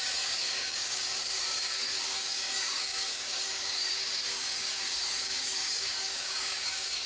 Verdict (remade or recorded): remade